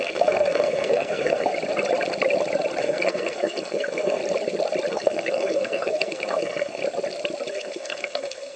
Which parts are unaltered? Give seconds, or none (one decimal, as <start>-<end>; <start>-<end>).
1.5-2.8; 4.2-4.9; 6.8-7.5

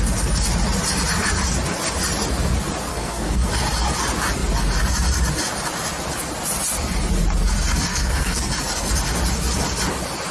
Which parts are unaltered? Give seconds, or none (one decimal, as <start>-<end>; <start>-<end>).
0.0-2.9; 3.5-7.9; 8.5-10.3

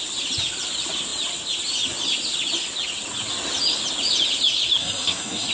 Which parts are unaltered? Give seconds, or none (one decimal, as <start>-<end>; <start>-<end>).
0.0-4.8